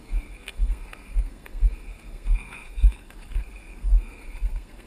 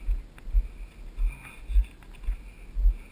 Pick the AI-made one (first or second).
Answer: first